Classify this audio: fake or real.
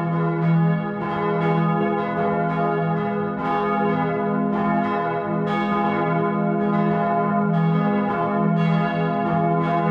real